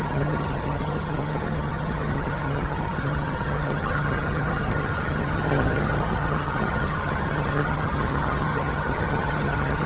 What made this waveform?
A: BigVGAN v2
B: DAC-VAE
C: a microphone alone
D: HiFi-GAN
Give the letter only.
D